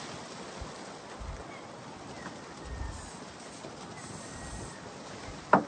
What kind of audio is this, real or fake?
real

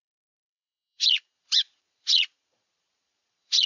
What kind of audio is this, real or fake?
fake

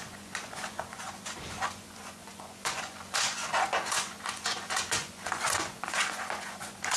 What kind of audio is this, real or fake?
fake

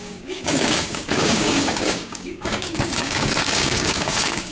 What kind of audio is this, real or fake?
fake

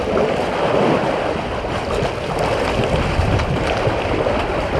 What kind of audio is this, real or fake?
real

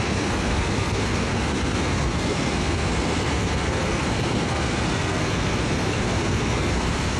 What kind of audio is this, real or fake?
fake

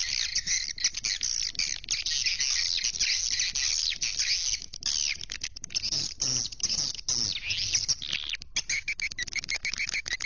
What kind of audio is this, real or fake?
real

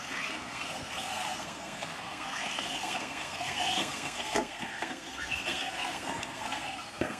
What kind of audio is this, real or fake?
fake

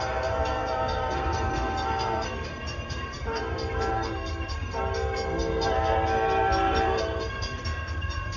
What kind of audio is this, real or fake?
fake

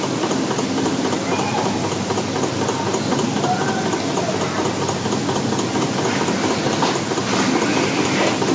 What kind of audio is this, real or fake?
real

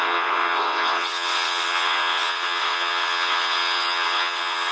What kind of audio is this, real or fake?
fake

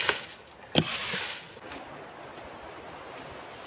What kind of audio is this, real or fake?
real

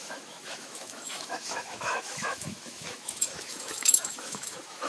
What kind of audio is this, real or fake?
fake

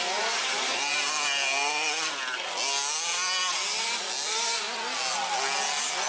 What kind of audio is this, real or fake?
real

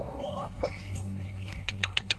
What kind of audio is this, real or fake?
fake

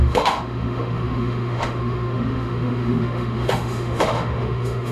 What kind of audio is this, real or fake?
fake